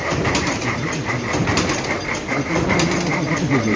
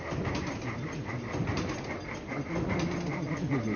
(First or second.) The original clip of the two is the second